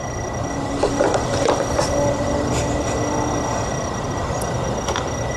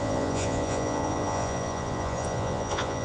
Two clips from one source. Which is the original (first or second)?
first